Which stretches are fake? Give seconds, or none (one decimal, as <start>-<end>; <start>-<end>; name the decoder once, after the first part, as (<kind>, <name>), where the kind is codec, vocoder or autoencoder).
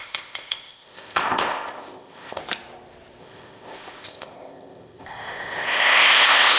0.0-2.4 (codec, ZipCodec); 3.2-6.6